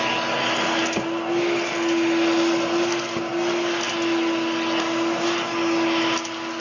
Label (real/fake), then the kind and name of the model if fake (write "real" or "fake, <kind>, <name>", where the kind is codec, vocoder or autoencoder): real